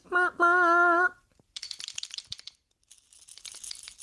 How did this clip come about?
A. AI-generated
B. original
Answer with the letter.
B